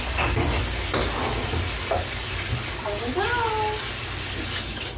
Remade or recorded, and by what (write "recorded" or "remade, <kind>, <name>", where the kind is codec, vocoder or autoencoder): recorded